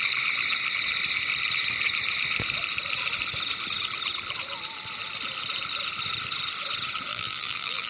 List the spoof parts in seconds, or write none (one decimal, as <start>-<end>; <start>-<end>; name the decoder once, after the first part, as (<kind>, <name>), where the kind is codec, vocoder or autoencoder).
7.1-7.9 (vocoder, BigVGAN v2)